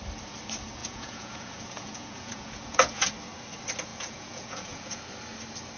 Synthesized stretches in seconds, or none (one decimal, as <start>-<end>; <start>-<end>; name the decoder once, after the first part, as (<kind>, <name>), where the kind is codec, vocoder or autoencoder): 0.8-3.1 (vocoder, Vocos); 3.9-5.0